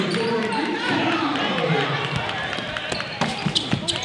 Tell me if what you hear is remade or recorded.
remade